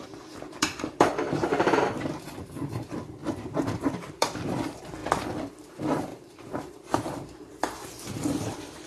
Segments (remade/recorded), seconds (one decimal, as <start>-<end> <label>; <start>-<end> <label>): 0.0-5.0 remade; 5.0-5.5 recorded; 5.5-8.9 remade